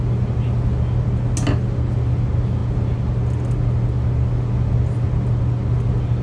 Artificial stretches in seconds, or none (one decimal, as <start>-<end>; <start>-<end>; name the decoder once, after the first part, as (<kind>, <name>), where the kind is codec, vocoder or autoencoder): none